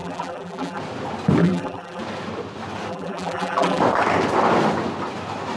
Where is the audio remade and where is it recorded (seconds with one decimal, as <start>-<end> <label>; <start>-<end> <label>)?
0.0-0.8 remade; 0.8-1.4 recorded; 1.4-2.0 remade; 2.0-2.9 recorded; 2.9-3.8 remade; 3.8-5.6 recorded